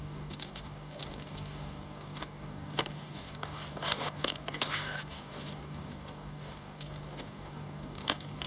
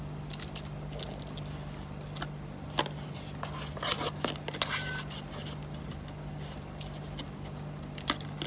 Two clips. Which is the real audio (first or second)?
second